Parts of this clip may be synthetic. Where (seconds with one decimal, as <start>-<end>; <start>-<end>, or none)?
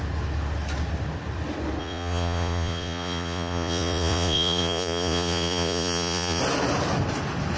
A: 1.8-6.4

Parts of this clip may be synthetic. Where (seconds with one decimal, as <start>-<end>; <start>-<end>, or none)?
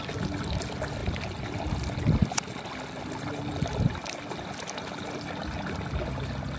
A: none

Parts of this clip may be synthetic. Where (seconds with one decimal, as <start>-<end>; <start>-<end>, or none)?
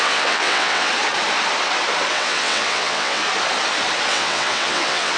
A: 0.0-0.9; 2.1-3.2; 4.1-5.2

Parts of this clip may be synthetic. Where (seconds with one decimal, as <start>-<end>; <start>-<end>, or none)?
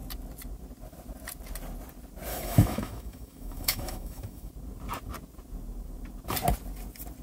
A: 2.3-4.5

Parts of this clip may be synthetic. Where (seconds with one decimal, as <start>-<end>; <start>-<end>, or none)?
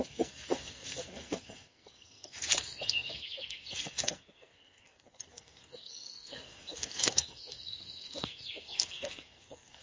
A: 0.0-9.8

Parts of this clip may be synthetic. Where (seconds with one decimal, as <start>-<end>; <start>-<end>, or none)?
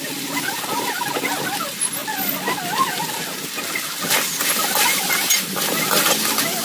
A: none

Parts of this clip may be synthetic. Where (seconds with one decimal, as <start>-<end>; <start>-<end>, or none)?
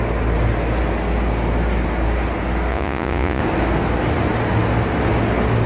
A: 2.7-3.4